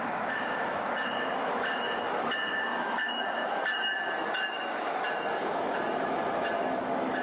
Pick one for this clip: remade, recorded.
remade